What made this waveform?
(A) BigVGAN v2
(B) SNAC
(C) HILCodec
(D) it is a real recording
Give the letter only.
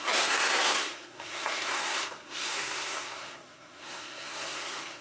B